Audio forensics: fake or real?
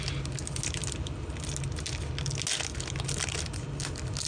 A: real